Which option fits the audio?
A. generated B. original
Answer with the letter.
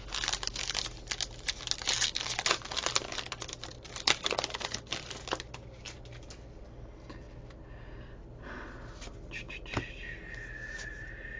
B